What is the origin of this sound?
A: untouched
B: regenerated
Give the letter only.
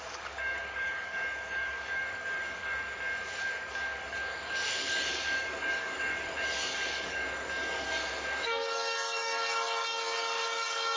B